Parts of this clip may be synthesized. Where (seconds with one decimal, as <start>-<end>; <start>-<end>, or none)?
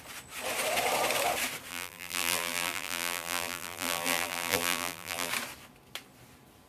1.7-5.3